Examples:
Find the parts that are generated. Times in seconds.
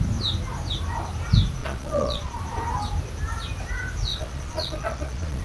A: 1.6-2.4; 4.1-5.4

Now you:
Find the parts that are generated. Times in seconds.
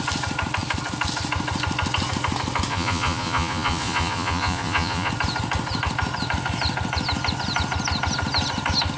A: 2.7-5.1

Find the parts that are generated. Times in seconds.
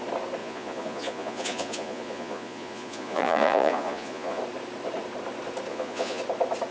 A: 0.4-4.4; 5.7-6.2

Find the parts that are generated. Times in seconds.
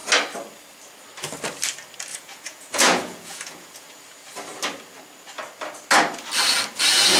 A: 2.1-4.0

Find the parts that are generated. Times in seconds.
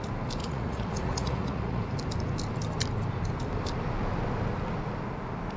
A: 0.4-1.8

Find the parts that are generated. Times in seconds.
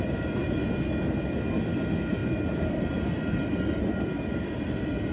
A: none